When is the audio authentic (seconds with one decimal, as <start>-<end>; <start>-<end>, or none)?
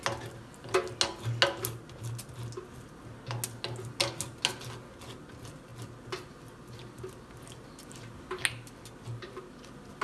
0.0-10.0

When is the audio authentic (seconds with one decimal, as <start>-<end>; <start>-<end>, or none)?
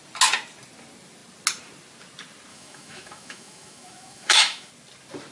0.0-2.5; 4.7-5.3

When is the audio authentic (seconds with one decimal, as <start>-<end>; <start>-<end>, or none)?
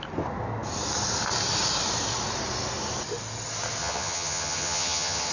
0.0-3.8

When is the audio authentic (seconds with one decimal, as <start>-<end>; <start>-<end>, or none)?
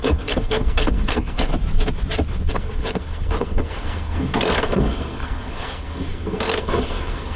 1.5-2.5